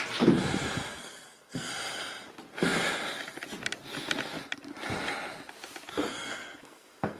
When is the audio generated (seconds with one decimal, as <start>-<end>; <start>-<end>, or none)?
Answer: 0.9-1.7; 6.1-7.2